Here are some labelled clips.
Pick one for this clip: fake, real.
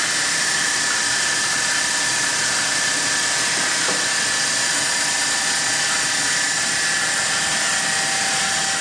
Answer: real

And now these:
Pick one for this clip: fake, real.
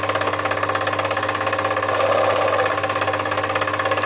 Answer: real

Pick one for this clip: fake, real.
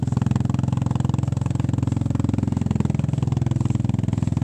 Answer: real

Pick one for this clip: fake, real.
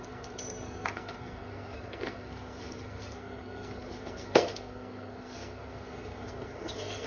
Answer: fake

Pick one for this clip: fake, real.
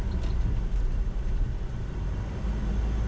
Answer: real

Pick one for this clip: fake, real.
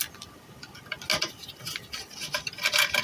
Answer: real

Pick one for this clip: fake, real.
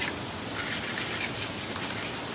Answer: real